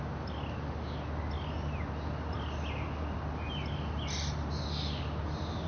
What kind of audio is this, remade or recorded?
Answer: recorded